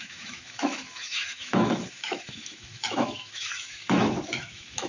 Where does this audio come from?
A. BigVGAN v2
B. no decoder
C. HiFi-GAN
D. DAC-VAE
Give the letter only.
D